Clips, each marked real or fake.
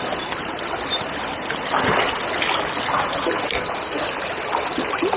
real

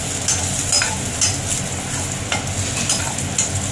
real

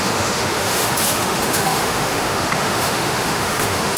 fake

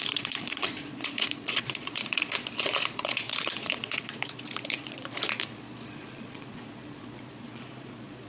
fake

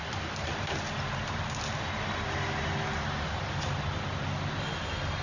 real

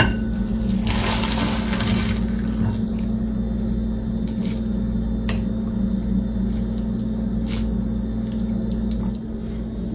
real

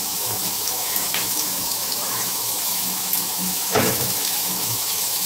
fake